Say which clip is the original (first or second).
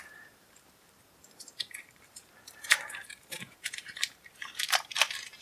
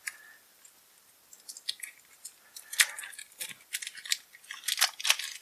second